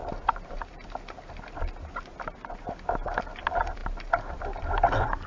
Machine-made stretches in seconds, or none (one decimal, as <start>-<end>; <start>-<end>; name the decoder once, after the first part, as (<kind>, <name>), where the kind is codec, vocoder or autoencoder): none